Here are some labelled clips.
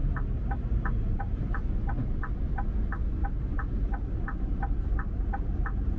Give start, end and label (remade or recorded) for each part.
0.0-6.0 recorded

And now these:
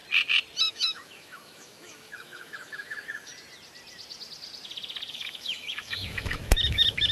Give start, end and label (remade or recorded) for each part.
0.0-0.7 recorded; 0.7-3.3 remade; 3.3-5.1 recorded; 5.1-7.1 remade

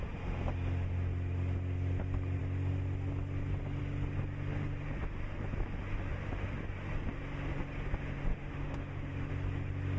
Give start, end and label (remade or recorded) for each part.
0.0-8.3 recorded; 8.3-9.3 remade; 9.3-10.0 recorded

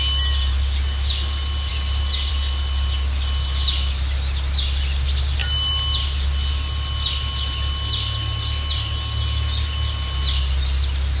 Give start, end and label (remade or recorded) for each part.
0.0-11.2 recorded

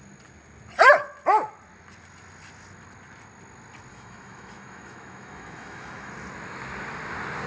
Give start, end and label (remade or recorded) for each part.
0.0-3.9 recorded; 3.9-6.1 remade; 6.1-7.5 recorded

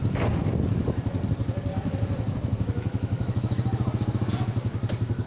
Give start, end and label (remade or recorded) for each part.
0.0-1.7 recorded; 1.7-4.3 remade; 4.3-5.3 recorded